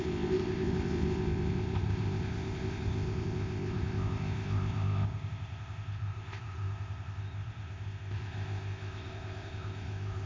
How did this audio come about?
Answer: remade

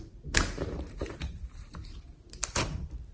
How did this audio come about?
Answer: recorded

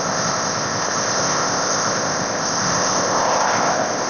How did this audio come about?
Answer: remade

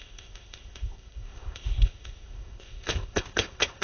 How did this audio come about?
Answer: remade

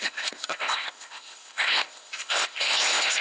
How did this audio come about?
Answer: remade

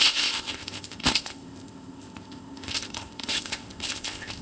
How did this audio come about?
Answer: remade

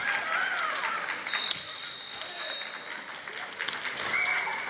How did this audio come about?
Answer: recorded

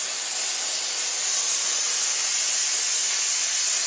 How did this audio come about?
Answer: recorded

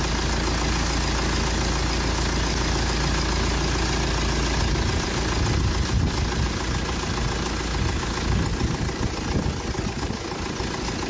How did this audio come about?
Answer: recorded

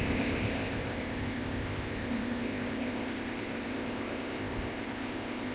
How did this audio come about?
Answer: remade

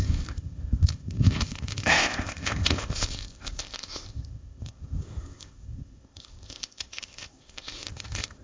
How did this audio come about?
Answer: remade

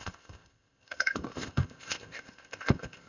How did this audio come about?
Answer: remade